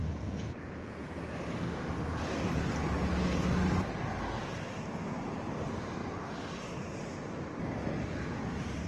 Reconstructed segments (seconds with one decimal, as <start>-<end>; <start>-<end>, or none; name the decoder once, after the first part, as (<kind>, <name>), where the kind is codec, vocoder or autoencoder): 0.0-1.1 (vocoder, Vocos)